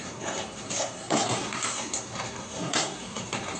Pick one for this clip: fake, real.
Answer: fake